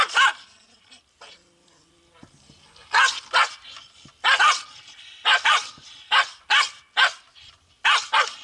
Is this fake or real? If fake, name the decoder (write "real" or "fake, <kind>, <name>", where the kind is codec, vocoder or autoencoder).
real